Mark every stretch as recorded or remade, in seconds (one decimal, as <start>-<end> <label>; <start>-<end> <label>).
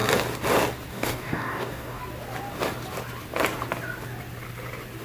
0.0-0.9 recorded; 0.9-2.0 remade; 2.0-5.0 recorded